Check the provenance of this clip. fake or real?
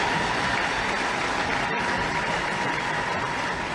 real